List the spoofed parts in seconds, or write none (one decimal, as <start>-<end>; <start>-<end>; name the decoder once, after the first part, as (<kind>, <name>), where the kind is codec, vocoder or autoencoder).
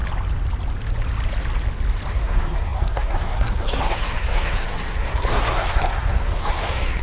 2.1-7.0 (codec, SNAC)